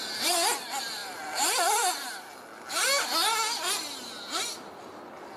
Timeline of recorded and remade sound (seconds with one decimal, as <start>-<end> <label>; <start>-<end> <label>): 0.0-5.4 recorded